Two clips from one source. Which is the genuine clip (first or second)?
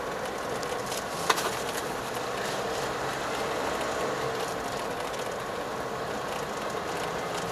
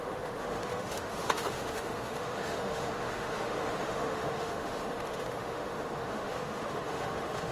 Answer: first